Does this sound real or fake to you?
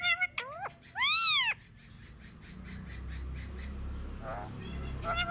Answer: real